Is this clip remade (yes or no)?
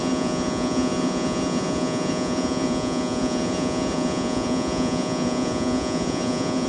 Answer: yes